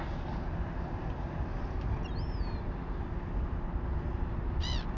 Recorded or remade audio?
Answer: recorded